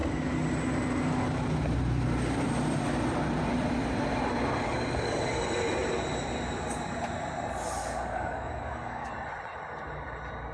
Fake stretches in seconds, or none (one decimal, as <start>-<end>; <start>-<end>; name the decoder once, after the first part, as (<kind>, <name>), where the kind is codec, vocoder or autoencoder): 4.6-5.3 (codec, DAC); 7.8-9.1

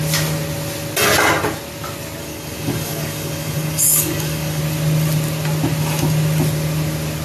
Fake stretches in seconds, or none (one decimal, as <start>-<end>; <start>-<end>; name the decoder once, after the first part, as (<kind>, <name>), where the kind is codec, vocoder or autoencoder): 2.2-4.6 (codec, DAC)

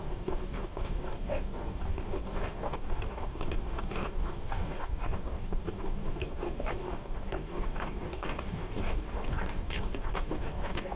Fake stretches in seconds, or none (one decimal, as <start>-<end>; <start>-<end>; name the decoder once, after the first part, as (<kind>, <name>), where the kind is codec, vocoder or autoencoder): 0.0-11.0 (codec, DAC)

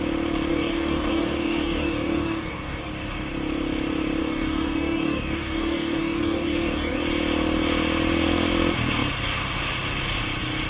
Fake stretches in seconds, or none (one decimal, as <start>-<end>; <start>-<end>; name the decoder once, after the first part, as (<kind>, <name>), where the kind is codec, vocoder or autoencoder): 0.5-2.9 (codec, DAC); 4.2-7.0

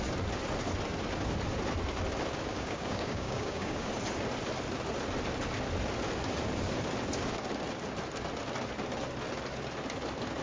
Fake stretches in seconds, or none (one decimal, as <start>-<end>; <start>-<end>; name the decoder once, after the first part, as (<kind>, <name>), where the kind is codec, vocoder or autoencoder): 2.5-3.9 (codec, DAC)